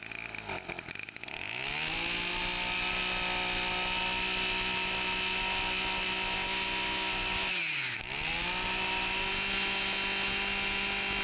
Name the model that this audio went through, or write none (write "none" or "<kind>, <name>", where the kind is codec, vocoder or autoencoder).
none